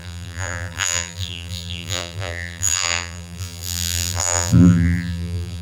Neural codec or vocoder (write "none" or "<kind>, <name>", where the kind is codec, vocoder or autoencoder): vocoder, BigVGAN v2